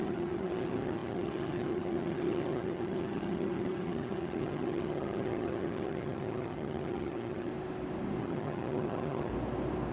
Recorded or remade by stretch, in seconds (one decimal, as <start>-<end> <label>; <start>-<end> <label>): 0.0-7.5 remade; 7.5-8.2 recorded; 8.2-9.3 remade; 9.3-9.9 recorded